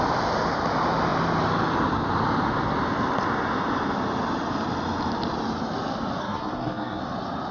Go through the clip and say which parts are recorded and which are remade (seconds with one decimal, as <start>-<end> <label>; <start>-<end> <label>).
0.0-6.2 recorded; 6.2-7.0 remade; 7.0-7.5 recorded